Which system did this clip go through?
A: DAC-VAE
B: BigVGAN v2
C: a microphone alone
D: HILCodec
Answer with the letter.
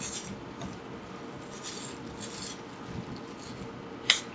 C